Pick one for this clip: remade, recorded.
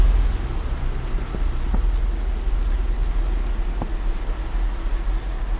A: recorded